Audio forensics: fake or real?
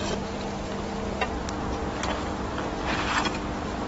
real